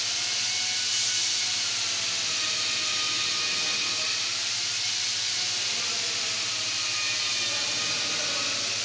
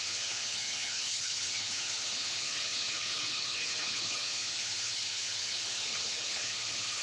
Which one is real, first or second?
first